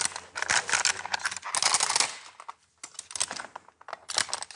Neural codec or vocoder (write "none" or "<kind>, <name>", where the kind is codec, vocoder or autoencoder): none